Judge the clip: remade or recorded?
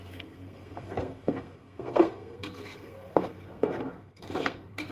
remade